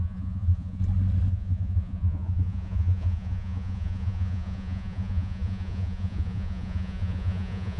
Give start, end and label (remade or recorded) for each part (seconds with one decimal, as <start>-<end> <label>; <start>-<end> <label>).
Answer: 0.0-0.8 remade; 0.8-1.3 recorded; 1.3-7.8 remade